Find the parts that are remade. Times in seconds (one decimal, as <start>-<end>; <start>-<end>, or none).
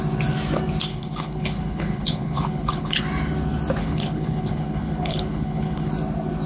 0.9-3.0; 3.8-5.9